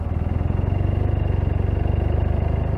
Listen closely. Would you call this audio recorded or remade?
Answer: recorded